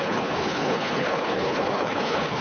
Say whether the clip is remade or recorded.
remade